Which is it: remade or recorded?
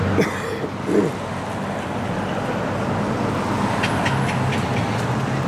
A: recorded